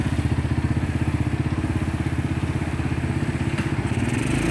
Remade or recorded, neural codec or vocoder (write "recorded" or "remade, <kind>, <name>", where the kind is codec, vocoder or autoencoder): recorded